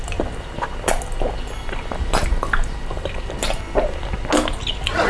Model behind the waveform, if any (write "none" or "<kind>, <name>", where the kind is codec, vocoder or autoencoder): none